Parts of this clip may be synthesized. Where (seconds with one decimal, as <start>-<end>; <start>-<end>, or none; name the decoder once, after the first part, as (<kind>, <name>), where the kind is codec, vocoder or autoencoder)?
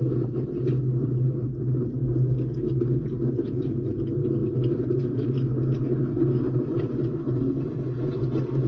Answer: none